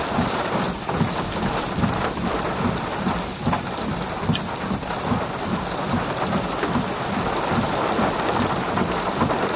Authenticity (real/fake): real